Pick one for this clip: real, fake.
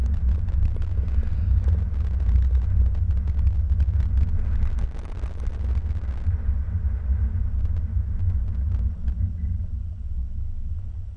real